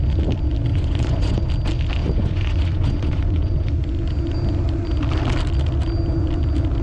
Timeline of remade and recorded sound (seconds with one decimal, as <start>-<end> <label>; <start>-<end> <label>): 0.0-0.7 recorded; 0.7-1.5 remade; 1.5-2.0 recorded; 2.0-3.7 remade; 3.7-6.8 recorded